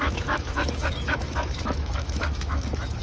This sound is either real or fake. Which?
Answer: fake